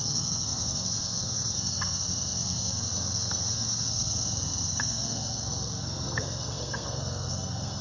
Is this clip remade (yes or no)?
yes